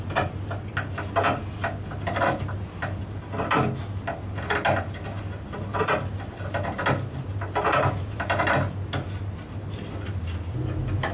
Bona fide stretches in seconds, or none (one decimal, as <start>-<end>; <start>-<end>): 0.0-11.1